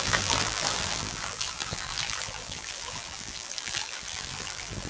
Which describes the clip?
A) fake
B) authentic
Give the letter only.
A